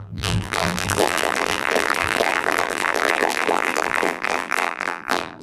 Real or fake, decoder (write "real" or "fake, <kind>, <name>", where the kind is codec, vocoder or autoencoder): fake, vocoder, BigVGAN v2